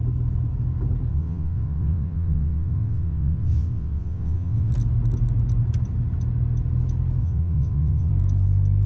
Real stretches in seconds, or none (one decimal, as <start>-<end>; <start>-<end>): 0.0-1.1; 4.7-7.2; 8.1-8.9